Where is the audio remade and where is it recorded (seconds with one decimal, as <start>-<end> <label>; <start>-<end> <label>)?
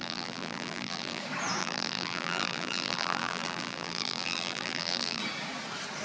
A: 0.0-1.2 remade; 1.2-1.6 recorded; 1.6-5.2 remade; 5.2-6.0 recorded